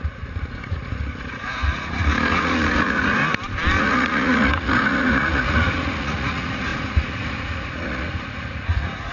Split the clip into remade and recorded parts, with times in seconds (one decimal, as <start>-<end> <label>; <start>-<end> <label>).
0.0-3.2 remade; 3.2-3.8 recorded; 3.8-9.1 remade